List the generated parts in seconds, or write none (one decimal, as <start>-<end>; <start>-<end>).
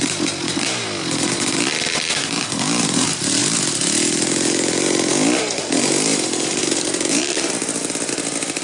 6.1-7.5